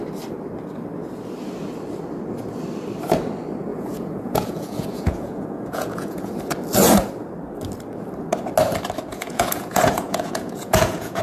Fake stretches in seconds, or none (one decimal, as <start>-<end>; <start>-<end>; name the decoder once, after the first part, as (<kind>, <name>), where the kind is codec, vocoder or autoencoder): 3.7-6.3 (vocoder, Vocos); 9.1-11.2